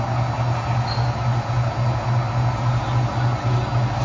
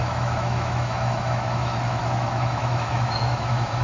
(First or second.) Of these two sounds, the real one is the first